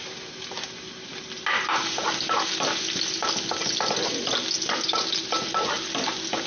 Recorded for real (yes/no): yes